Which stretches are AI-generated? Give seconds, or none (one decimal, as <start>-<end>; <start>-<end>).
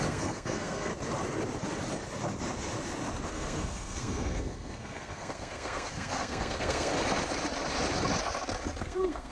0.0-0.9; 3.3-6.9; 8.8-9.3